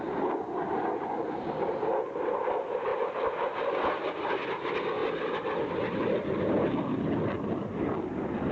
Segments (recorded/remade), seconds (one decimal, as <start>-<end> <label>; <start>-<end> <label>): 0.0-8.5 recorded